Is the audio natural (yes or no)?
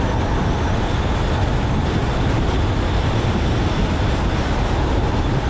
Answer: yes